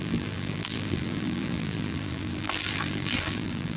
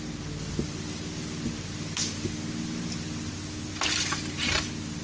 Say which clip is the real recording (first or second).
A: second